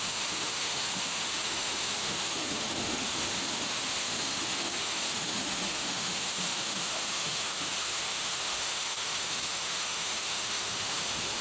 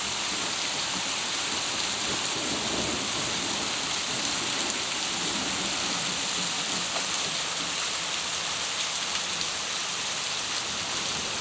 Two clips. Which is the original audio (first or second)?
second